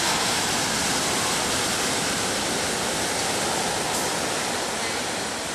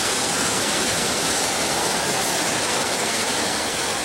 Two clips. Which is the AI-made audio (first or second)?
second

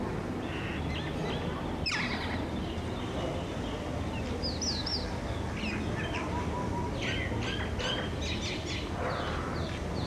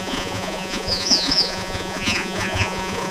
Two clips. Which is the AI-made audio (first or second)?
second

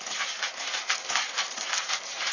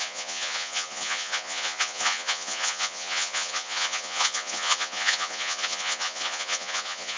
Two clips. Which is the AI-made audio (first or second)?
second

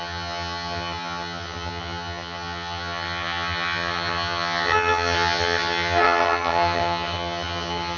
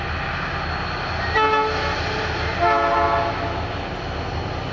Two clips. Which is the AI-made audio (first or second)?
first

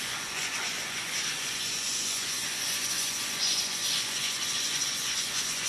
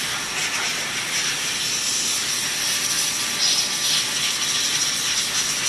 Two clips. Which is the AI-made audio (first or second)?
first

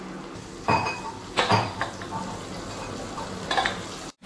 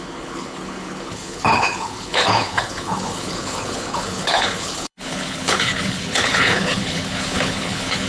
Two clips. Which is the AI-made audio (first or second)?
second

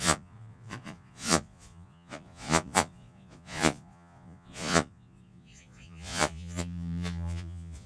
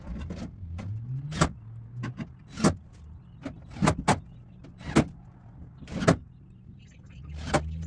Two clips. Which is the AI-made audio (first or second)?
first